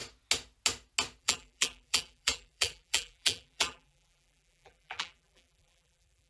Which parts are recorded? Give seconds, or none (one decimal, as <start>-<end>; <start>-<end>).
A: 0.0-1.2